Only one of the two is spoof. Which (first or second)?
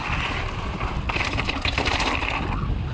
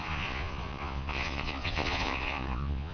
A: second